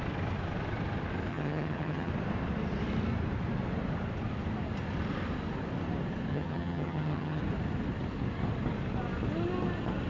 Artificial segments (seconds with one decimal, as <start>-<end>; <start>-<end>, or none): 1.3-2.1; 6.3-7.4